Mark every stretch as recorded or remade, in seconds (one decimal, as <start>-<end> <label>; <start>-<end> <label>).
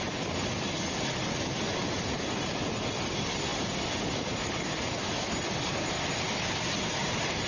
0.0-7.5 recorded